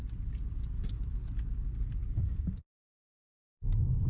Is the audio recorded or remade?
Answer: recorded